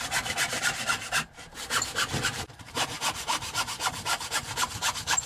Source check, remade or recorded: remade